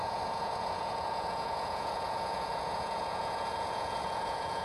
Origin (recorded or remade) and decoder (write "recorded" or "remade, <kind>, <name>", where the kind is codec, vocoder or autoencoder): remade, vocoder, Vocos